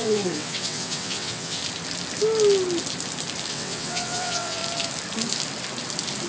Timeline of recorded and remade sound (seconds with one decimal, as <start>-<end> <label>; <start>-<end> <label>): 0.0-1.6 remade; 1.6-3.5 recorded; 3.5-4.6 remade; 4.6-6.3 recorded